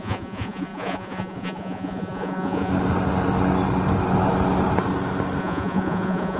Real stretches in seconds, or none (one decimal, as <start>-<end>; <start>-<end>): 2.7-5.4